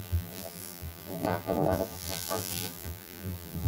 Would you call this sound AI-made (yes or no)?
yes